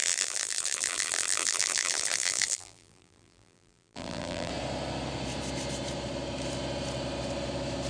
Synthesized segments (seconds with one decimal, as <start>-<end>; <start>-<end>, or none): 0.0-4.5